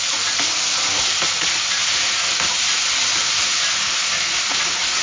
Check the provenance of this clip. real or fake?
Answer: real